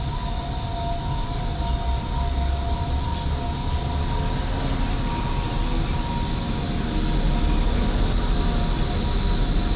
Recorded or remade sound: recorded